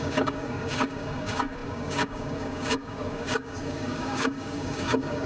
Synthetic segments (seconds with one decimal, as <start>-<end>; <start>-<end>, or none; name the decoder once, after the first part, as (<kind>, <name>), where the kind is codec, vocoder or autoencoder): 0.0-5.3 (codec, DAC)